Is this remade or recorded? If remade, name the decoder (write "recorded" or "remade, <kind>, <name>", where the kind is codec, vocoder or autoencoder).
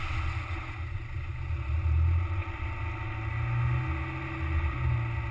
recorded